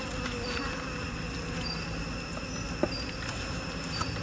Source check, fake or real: real